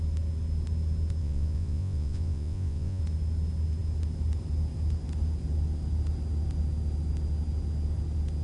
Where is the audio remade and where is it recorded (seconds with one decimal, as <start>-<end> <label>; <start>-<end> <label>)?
0.0-1.2 recorded; 1.2-3.0 remade; 3.0-8.4 recorded